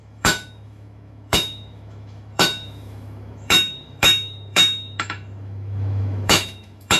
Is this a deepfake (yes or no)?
yes